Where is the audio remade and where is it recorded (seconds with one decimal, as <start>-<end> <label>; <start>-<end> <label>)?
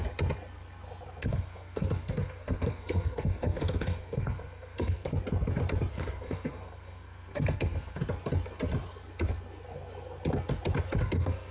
0.0-1.2 recorded; 1.2-5.1 remade; 5.1-5.9 recorded; 5.9-8.0 remade; 8.0-11.0 recorded; 11.0-11.5 remade